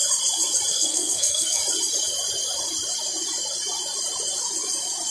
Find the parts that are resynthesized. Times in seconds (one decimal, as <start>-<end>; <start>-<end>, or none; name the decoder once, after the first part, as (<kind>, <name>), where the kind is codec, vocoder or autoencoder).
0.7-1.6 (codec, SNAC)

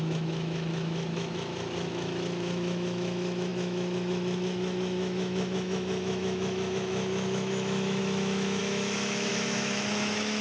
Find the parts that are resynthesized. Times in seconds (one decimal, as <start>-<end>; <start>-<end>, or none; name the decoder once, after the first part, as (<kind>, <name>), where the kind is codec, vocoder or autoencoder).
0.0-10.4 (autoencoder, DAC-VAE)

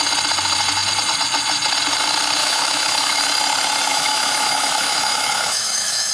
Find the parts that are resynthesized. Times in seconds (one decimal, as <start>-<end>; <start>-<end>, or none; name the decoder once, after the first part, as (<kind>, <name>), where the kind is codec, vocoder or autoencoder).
2.4-3.2 (autoencoder, DAC-VAE); 3.9-6.1

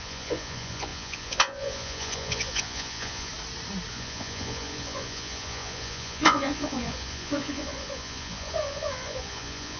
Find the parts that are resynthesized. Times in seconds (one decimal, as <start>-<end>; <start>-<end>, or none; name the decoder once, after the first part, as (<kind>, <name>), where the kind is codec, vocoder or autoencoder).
0.0-3.3 (vocoder, Vocos); 3.9-9.8

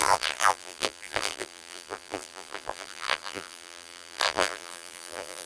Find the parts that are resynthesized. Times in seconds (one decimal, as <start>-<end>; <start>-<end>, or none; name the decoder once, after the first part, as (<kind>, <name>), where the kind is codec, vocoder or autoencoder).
0.0-5.5 (vocoder, BigVGAN v2)